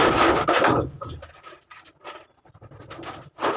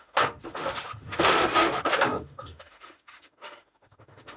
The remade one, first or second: second